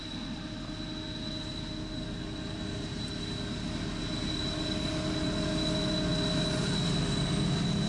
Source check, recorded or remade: recorded